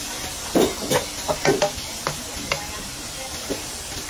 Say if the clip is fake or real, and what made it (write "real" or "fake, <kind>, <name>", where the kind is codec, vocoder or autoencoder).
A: real